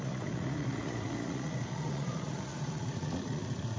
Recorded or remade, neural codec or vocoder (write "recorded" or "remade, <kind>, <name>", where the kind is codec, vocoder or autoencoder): remade, vocoder, Vocos